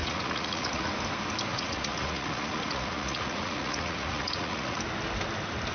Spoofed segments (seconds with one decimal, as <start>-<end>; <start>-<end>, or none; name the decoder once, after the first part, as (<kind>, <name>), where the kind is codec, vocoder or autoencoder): 0.0-0.9 (vocoder, Vocos); 1.5-4.8